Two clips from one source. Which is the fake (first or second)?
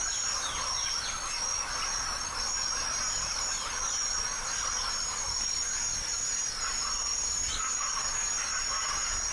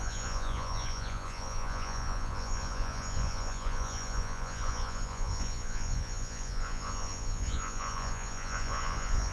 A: second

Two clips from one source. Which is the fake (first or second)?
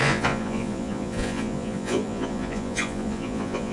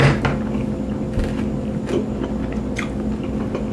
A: first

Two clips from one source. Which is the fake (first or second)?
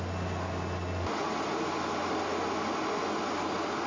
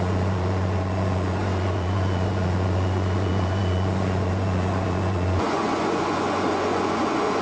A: second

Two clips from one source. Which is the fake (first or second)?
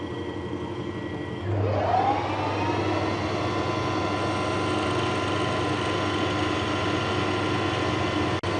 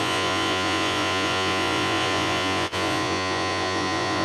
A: second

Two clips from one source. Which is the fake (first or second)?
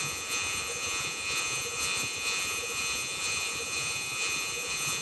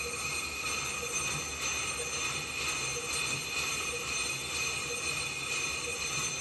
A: first